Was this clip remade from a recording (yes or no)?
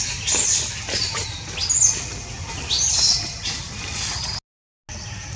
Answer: no